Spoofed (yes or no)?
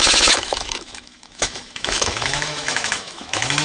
yes